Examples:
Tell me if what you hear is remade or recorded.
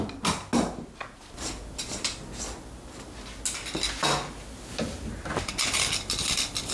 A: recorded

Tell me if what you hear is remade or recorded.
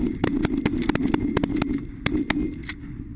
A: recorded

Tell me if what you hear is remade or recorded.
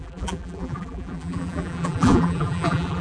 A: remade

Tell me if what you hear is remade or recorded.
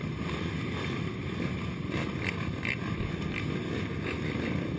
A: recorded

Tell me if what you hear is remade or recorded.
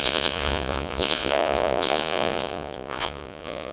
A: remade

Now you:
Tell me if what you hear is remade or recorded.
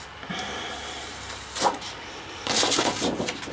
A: recorded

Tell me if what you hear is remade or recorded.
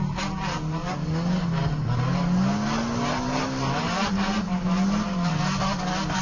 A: recorded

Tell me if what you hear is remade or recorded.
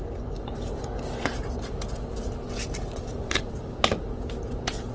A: recorded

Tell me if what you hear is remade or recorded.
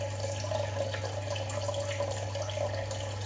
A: recorded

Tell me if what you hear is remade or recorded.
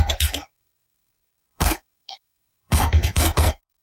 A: remade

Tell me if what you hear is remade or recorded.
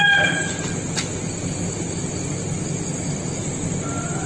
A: recorded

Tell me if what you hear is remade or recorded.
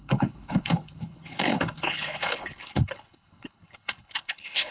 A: remade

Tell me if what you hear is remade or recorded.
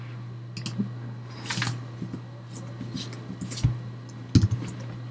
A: recorded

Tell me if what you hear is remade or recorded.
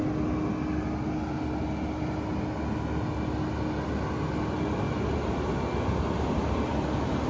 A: recorded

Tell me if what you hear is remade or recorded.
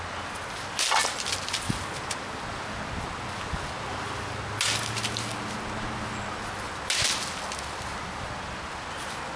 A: recorded